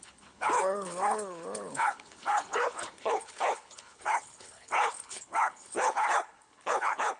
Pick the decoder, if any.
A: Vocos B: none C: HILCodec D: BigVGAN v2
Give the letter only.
C